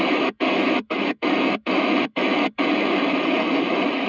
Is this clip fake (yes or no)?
yes